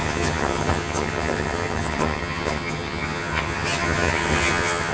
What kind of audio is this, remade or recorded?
remade